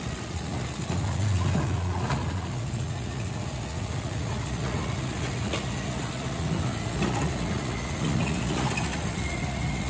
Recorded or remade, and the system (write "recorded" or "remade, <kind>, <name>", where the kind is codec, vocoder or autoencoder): remade, vocoder, Vocos